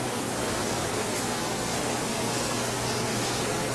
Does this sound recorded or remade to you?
remade